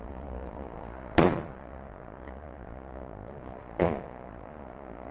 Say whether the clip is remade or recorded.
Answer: remade